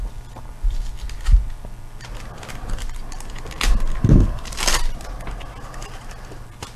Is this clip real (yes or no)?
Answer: yes